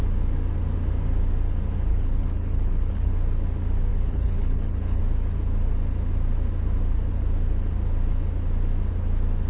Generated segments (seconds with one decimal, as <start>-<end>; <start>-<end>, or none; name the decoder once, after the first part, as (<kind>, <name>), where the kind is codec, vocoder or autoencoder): 1.9-3.1 (codec, HILCodec); 3.9-5.0